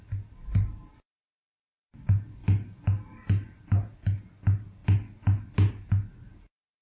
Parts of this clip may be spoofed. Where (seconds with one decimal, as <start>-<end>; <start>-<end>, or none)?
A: none